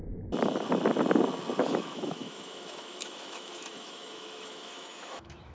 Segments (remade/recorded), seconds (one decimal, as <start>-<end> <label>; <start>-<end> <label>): 0.0-1.6 recorded; 1.6-5.5 remade